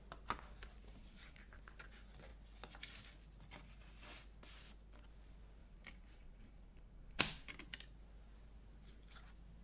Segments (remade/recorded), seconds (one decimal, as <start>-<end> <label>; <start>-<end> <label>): 0.0-1.0 recorded; 1.0-1.6 remade; 1.6-5.6 recorded; 5.6-7.2 remade; 7.2-9.6 recorded